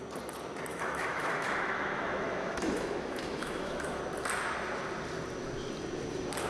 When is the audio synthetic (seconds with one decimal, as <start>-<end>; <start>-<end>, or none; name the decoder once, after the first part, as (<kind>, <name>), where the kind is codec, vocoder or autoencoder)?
0.7-4.0 (autoencoder, DAC-VAE)